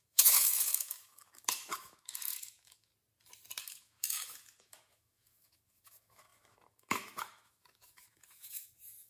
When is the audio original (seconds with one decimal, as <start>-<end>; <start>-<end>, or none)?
2.9-3.6